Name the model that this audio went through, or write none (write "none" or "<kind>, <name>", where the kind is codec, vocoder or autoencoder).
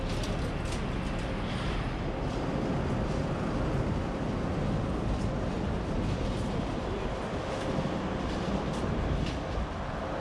none